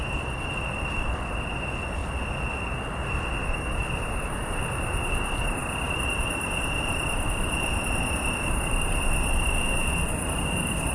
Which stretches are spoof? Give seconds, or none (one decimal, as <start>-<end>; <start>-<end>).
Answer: none